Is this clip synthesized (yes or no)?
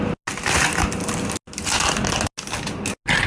no